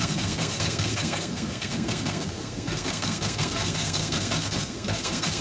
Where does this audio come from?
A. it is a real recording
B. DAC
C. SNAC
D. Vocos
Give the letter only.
C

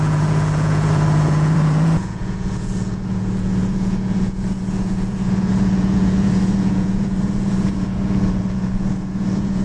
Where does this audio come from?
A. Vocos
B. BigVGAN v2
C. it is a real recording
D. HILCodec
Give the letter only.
A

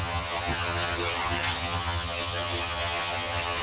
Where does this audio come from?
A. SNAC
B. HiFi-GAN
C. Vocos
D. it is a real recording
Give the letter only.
B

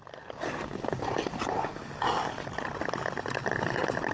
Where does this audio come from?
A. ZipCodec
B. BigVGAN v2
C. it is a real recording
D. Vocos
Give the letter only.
C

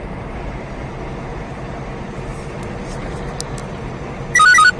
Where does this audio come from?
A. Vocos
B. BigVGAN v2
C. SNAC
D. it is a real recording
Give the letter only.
D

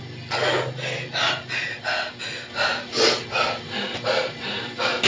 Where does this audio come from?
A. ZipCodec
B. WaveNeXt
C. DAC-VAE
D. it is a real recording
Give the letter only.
D